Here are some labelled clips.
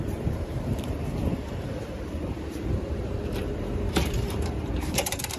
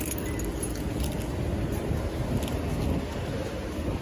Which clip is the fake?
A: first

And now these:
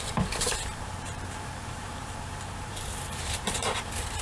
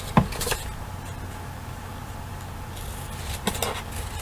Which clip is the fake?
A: first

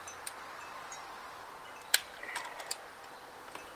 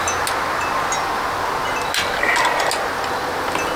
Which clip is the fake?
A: first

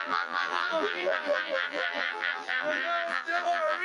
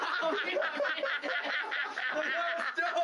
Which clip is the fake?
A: first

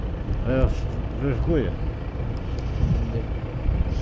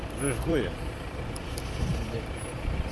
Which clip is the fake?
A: second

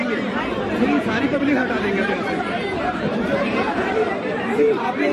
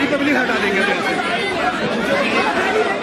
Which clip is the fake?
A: first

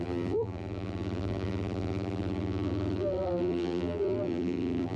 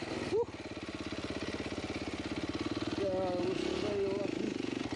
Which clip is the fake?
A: first